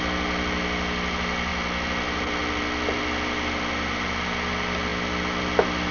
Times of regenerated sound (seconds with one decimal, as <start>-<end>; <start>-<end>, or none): none